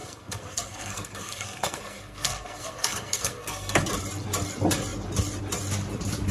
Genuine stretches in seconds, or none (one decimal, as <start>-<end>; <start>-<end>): 3.8-6.3